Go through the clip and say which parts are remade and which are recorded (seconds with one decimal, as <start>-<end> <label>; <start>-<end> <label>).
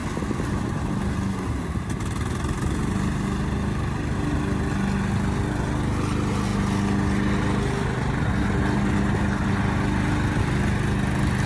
0.0-11.5 recorded